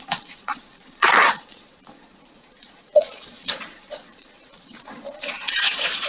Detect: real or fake fake